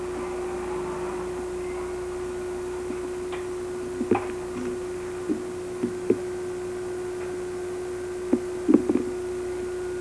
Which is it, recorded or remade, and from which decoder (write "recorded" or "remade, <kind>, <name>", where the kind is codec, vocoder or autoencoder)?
recorded